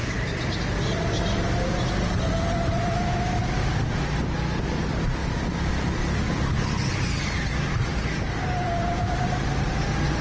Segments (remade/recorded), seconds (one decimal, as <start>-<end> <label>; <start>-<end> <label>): 0.0-10.2 recorded